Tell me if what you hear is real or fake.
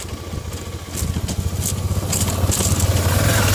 real